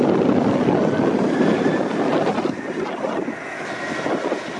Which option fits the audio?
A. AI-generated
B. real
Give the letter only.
B